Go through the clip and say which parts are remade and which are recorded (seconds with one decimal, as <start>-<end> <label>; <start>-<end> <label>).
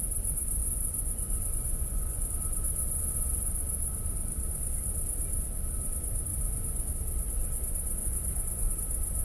0.0-0.6 recorded; 0.6-2.3 remade; 2.3-6.3 recorded; 6.3-6.9 remade; 6.9-8.0 recorded; 8.0-8.7 remade; 8.7-9.2 recorded